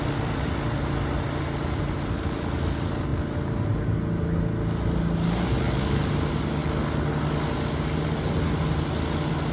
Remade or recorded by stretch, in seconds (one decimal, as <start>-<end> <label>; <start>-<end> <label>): 0.0-9.5 recorded